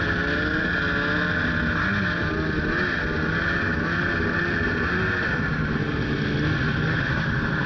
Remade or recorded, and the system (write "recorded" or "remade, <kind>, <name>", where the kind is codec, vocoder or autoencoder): recorded